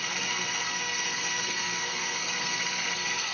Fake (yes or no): yes